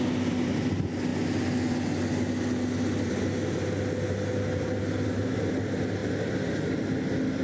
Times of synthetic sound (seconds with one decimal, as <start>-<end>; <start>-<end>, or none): none